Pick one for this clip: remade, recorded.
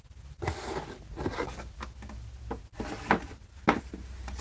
recorded